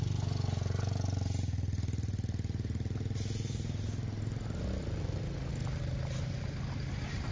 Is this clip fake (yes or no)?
no